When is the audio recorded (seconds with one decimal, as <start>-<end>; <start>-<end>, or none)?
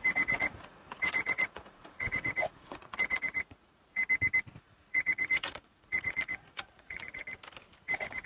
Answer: 4.0-4.6; 7.2-7.8